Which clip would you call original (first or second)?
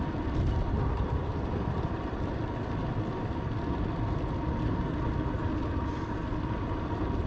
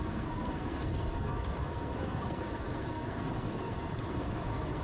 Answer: first